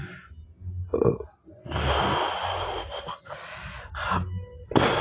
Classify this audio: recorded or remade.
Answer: recorded